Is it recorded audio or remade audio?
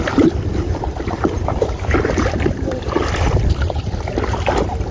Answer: remade